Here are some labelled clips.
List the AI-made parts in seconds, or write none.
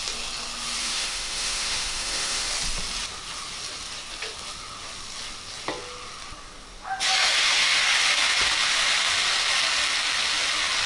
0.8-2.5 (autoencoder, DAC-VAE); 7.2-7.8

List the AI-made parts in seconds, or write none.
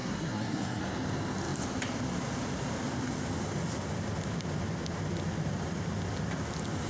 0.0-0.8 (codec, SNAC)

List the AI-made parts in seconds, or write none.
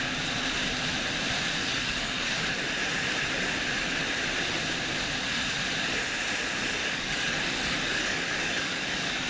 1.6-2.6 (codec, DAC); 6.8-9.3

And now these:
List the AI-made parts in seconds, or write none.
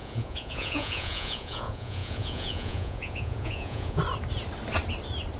0.0-4.0 (vocoder, Vocos)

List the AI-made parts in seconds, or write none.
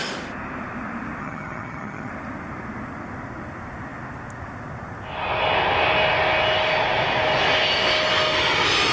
1.2-2.1 (vocoder, HiFi-GAN)